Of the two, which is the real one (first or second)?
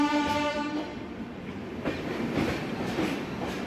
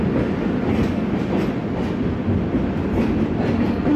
second